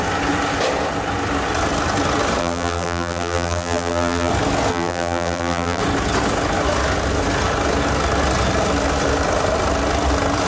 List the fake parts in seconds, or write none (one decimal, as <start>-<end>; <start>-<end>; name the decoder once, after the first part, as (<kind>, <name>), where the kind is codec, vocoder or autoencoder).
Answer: 2.4-4.3 (vocoder, BigVGAN v2); 4.7-5.8